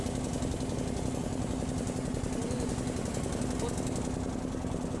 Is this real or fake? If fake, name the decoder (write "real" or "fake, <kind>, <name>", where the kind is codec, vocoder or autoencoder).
real